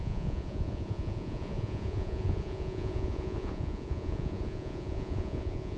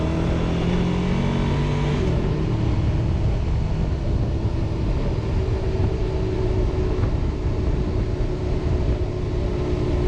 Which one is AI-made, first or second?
first